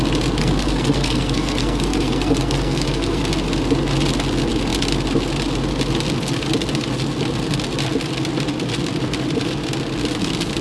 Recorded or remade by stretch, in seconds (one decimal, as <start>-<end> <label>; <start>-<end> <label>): 0.0-0.4 recorded; 0.4-3.2 remade; 3.2-10.6 recorded